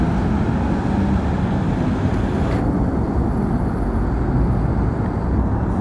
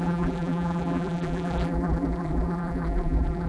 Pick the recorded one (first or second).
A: first